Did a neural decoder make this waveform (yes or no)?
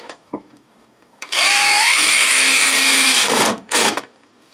yes